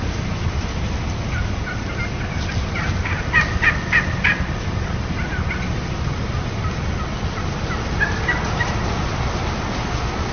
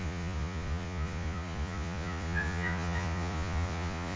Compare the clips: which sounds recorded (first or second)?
first